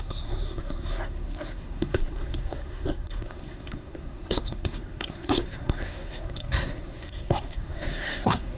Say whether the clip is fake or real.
fake